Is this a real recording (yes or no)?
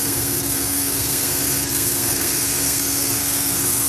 no